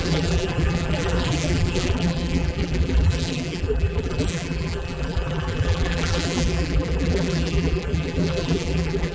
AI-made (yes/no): yes